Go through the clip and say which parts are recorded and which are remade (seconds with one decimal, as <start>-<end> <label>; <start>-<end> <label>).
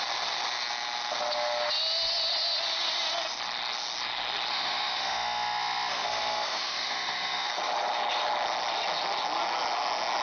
0.0-4.5 recorded; 4.5-7.5 remade; 7.5-10.2 recorded